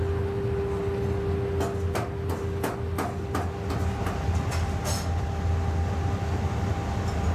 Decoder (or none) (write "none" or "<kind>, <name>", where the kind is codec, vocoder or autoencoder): none